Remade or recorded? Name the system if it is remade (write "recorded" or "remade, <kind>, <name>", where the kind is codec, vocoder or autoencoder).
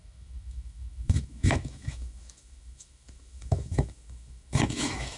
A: remade, autoencoder, DAC-VAE